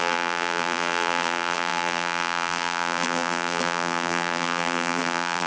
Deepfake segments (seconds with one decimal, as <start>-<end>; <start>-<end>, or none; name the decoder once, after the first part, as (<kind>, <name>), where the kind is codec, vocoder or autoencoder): 0.0-5.5 (vocoder, BigVGAN v2)